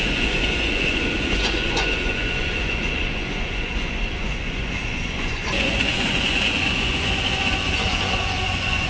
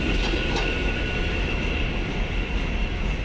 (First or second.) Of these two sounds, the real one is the second